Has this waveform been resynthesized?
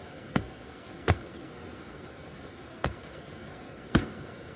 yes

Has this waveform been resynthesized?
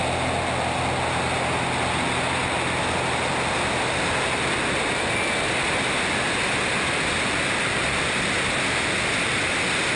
no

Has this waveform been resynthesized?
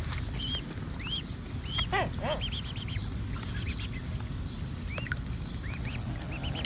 no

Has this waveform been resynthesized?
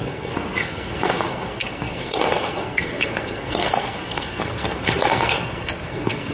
yes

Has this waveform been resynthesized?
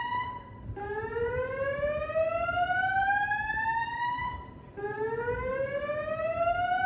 no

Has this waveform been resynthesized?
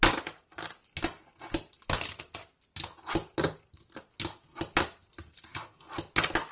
no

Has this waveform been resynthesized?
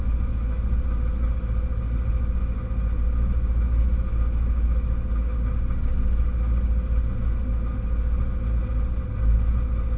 no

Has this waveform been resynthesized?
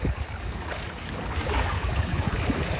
yes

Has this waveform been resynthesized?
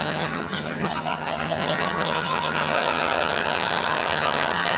yes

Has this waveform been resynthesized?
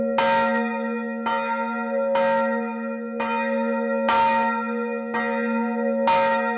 no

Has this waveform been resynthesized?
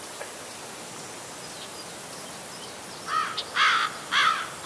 no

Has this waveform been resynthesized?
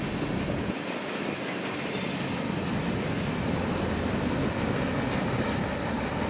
no